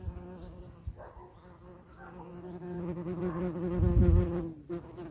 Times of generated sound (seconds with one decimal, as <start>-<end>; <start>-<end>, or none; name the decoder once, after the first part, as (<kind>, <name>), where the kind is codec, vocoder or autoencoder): 2.3-3.2 (vocoder, BigVGAN v2)